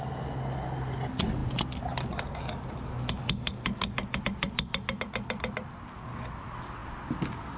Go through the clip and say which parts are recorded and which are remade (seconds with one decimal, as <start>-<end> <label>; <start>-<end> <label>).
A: 0.0-7.6 recorded